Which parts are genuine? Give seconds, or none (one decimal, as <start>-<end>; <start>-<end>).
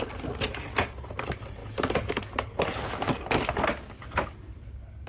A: 0.0-5.1